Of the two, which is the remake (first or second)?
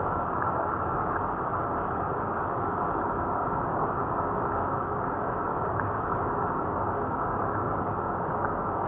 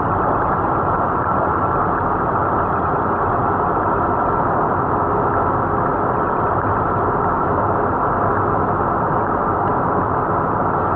first